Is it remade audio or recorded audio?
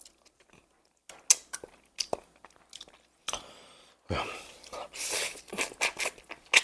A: recorded